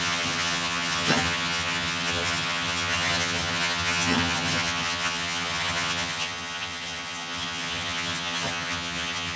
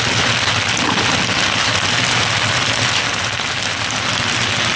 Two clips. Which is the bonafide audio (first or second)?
second